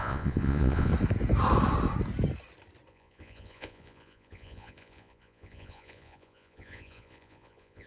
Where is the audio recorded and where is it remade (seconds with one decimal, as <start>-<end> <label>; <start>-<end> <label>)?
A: 0.0-0.9 remade; 0.9-2.9 recorded; 2.9-7.9 remade